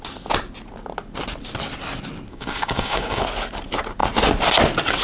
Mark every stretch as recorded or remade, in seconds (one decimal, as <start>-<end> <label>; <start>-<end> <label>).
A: 0.0-2.3 recorded; 2.3-3.2 remade; 3.2-5.0 recorded